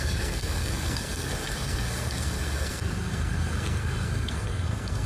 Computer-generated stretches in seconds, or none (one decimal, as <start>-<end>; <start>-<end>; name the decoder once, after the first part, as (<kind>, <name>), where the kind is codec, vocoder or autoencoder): 0.0-5.1 (codec, SNAC)